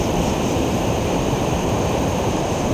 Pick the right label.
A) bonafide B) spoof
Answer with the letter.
B